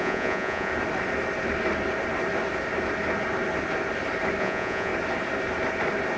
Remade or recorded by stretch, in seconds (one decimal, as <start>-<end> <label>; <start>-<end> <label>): 0.0-0.7 remade; 0.7-4.4 recorded; 4.4-4.9 remade; 4.9-6.2 recorded